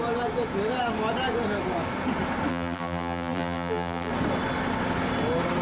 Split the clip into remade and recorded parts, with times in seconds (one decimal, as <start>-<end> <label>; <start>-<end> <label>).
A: 0.0-2.5 recorded; 2.5-4.1 remade; 4.1-5.6 recorded